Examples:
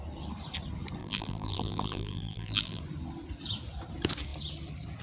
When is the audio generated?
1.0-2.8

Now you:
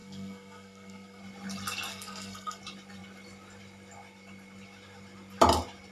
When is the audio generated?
0.0-1.2; 1.9-2.6

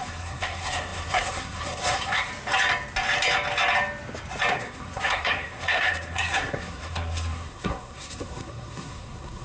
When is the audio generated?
0.0-2.3; 4.5-9.4

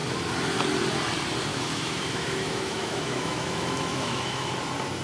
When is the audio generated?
1.5-4.5

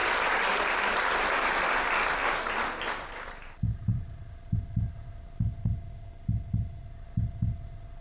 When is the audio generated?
3.9-4.6